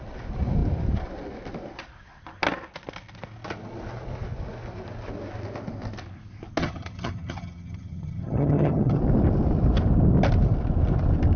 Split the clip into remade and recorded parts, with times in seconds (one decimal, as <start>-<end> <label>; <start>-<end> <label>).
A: 0.0-6.6 recorded; 6.6-9.0 remade; 9.0-11.4 recorded